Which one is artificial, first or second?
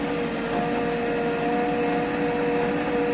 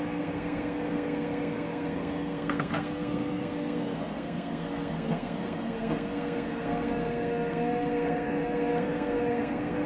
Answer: second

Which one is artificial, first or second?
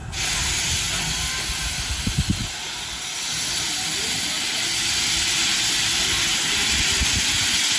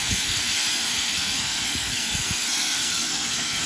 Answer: second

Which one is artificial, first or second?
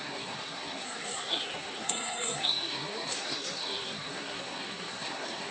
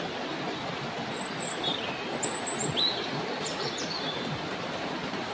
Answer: first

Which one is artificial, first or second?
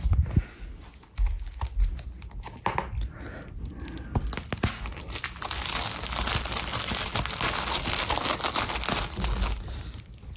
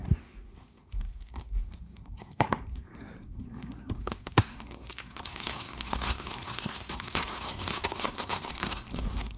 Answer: second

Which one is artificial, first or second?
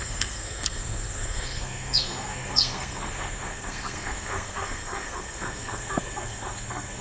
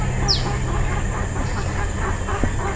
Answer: first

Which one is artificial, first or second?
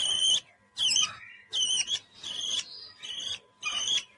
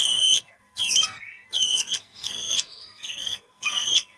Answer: second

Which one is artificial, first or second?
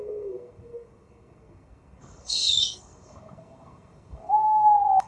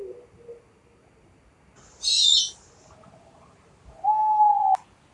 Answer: first